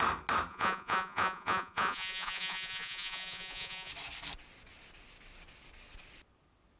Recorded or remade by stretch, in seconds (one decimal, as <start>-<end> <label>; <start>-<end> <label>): 0.0-0.5 recorded; 0.5-3.9 remade; 3.9-6.8 recorded